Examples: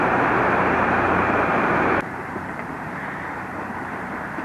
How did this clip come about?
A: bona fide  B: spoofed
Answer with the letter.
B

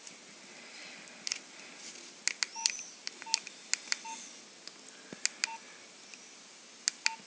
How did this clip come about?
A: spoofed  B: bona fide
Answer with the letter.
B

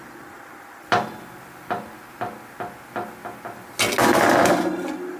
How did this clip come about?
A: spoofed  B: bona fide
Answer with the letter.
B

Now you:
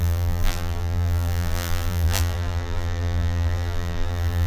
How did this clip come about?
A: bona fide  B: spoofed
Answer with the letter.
B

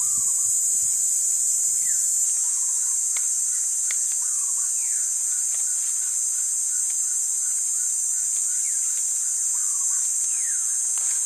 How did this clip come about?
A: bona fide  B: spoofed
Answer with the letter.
A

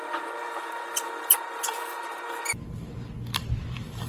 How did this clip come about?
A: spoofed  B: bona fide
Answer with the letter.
A